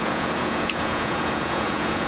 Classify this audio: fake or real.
fake